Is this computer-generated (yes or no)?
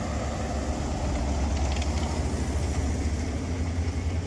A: no